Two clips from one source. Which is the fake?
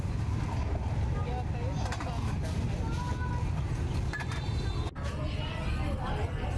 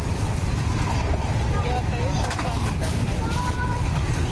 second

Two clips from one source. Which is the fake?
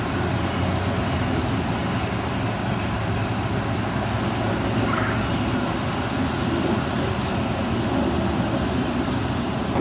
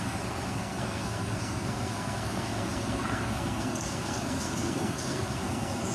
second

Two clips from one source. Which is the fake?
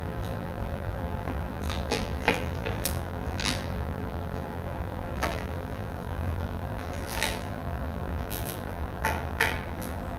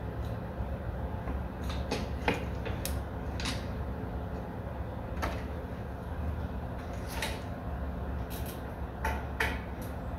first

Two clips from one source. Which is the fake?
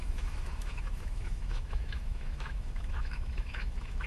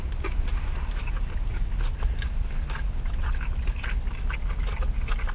first